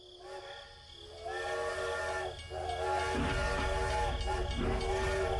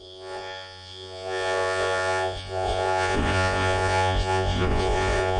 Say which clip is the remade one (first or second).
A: second